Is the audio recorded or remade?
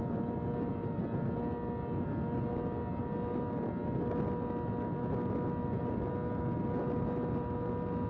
recorded